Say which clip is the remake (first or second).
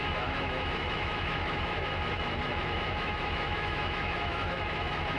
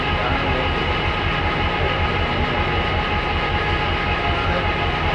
first